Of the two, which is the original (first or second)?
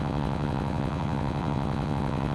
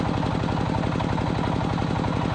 second